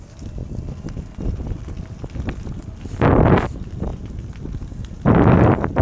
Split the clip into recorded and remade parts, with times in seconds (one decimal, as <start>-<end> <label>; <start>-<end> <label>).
0.0-5.8 recorded